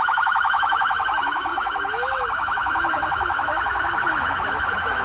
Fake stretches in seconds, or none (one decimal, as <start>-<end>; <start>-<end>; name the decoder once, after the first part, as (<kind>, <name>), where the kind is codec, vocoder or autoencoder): 0.0-5.0 (autoencoder, DAC-VAE)